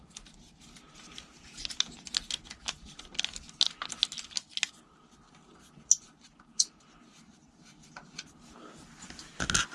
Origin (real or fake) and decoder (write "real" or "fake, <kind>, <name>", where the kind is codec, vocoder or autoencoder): real